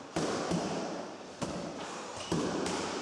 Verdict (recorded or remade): remade